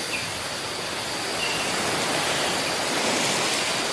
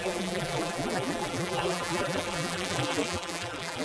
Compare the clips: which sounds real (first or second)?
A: first